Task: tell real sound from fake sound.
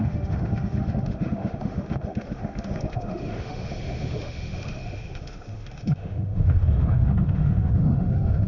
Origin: fake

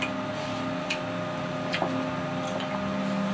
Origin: real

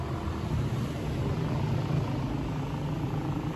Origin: real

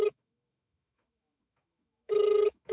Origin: fake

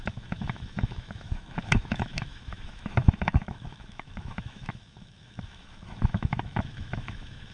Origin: fake